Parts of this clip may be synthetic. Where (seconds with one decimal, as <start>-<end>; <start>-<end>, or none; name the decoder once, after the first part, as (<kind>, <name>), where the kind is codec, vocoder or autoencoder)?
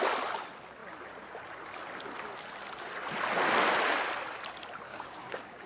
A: 4.9-5.7 (codec, DAC)